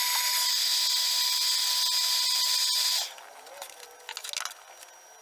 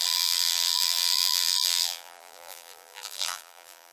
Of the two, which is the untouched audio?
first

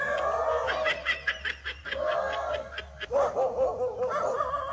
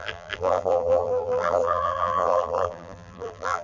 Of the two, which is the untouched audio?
first